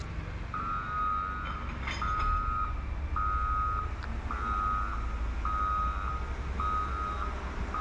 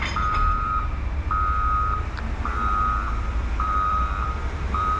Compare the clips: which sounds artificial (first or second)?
second